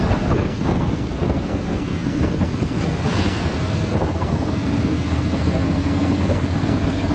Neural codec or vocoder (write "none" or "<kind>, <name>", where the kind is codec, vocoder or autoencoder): codec, SNAC